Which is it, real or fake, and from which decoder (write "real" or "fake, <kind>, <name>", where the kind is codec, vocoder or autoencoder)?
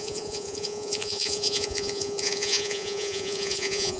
fake, vocoder, Vocos